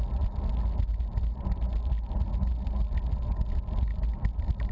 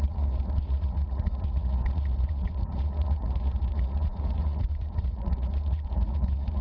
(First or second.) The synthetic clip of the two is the second